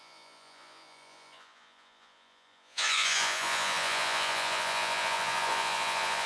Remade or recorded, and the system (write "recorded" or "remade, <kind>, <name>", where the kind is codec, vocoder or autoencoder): remade, vocoder, Vocos